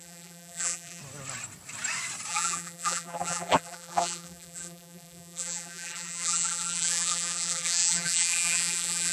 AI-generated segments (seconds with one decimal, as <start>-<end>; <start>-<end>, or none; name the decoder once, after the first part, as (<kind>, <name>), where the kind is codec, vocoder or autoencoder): 0.0-1.0 (vocoder, BigVGAN v2); 2.3-9.1